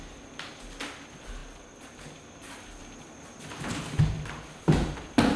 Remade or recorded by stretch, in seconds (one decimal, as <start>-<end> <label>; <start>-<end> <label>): 0.0-5.4 recorded

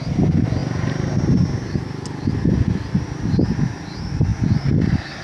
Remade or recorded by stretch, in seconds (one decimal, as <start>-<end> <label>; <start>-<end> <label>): 0.0-5.2 recorded

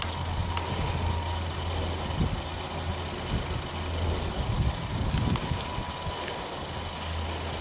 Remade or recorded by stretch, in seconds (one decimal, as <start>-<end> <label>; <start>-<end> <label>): 0.0-7.6 recorded

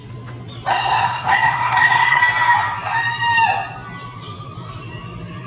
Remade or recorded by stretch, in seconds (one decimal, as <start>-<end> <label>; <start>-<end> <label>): 0.0-0.7 recorded; 0.7-2.2 remade; 2.2-5.5 recorded

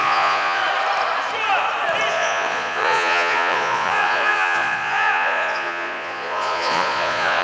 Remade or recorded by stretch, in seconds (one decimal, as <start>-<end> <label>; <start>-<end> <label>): 0.0-0.6 remade; 0.6-2.1 recorded; 2.1-7.4 remade

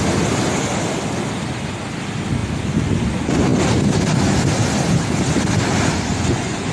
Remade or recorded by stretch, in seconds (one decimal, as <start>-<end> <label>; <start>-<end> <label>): 0.0-6.1 recorded; 6.1-6.7 remade